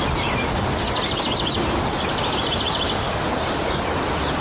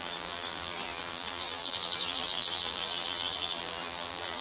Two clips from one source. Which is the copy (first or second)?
second